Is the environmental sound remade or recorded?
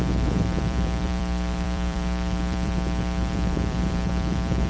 remade